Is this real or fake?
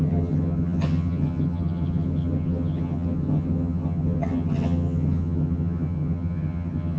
fake